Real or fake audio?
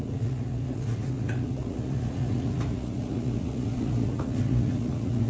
fake